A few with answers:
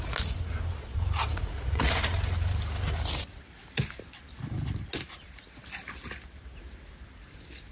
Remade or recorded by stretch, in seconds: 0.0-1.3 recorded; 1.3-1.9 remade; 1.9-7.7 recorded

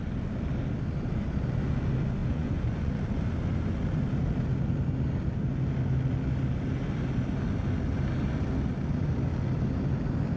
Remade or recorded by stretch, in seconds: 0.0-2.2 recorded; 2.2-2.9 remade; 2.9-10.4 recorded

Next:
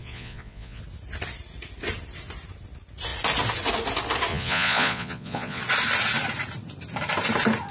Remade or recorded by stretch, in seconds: 0.0-0.8 remade; 0.8-4.3 recorded; 4.3-5.6 remade; 5.6-7.7 recorded

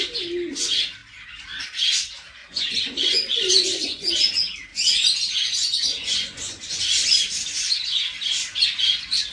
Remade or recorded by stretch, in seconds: 0.0-2.4 recorded; 2.4-4.1 remade; 4.1-4.7 recorded; 4.7-6.8 remade; 6.8-9.3 recorded

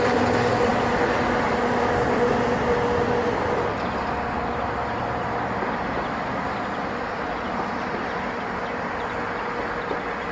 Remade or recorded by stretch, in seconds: 0.0-10.3 recorded

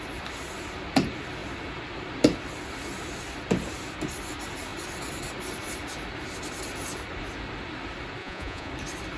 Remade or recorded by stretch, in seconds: 0.0-8.2 recorded; 8.2-8.7 remade; 8.7-9.2 recorded